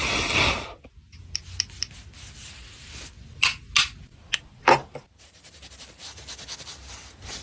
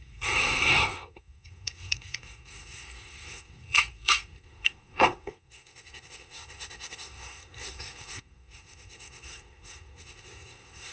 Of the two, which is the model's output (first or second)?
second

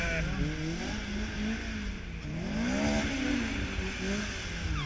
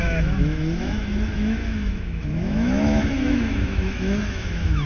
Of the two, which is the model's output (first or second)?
second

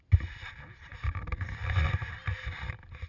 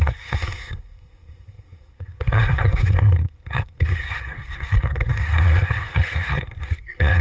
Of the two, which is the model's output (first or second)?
second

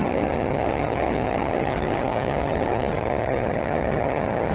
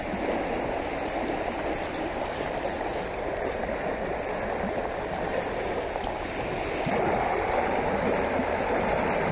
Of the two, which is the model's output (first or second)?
first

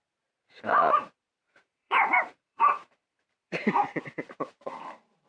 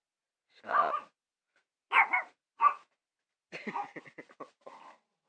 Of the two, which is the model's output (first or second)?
first